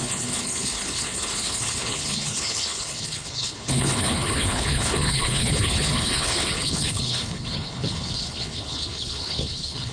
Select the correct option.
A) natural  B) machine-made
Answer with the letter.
B